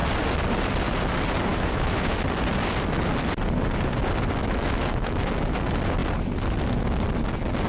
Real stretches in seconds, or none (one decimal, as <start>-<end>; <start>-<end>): 0.0-1.5; 2.1-4.4; 5.3-7.7